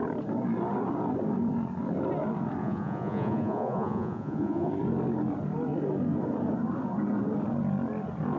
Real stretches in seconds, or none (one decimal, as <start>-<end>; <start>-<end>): 0.0-2.6; 4.7-8.4